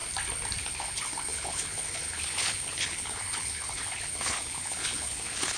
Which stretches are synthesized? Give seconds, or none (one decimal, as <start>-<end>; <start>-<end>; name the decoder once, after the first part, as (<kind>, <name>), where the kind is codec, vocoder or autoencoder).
0.7-5.6 (codec, HILCodec)